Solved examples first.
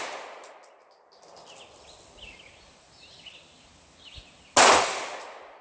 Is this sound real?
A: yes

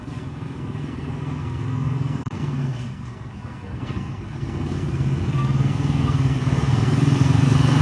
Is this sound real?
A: no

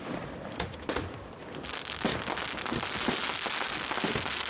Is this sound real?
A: yes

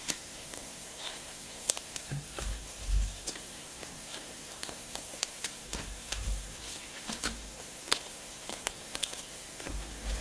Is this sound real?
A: no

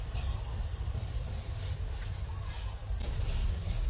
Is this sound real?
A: yes